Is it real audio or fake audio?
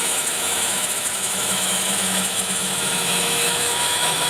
fake